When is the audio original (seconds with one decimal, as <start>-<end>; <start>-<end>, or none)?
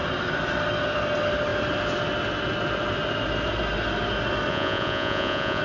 0.0-4.5